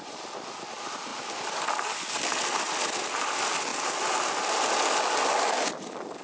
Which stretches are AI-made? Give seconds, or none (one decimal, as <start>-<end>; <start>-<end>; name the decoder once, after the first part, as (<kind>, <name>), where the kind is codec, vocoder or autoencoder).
none